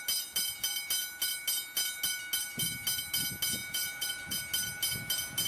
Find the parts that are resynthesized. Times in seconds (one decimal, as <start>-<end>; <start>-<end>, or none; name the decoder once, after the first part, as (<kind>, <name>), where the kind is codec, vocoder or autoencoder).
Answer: 3.6-4.4 (vocoder, Vocos)